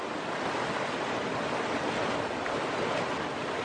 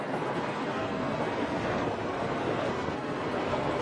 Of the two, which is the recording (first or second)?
first